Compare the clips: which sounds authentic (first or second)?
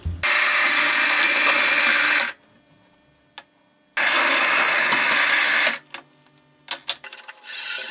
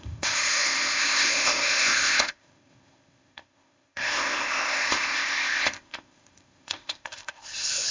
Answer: first